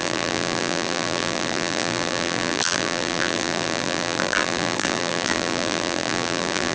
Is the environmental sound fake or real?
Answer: fake